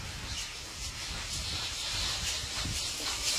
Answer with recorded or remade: remade